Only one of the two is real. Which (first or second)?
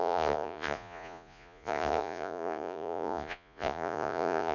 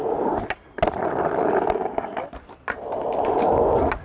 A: second